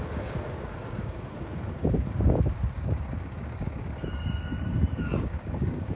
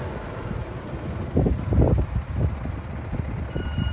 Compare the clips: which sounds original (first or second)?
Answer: second